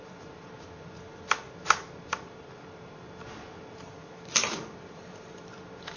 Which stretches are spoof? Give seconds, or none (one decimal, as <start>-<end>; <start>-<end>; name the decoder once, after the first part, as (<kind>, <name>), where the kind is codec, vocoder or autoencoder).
0.0-1.4 (vocoder, BigVGAN v2); 3.8-6.0